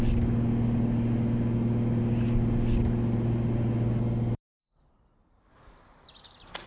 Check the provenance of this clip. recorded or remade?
recorded